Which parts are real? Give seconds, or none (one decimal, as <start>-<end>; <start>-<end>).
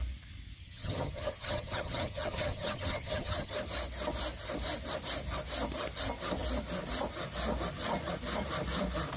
0.0-0.6; 3.5-9.2